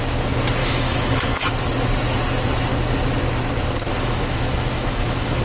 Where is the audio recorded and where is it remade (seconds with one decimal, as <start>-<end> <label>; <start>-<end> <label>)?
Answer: 0.0-0.6 recorded; 0.6-1.5 remade; 1.5-3.9 recorded; 3.9-5.4 remade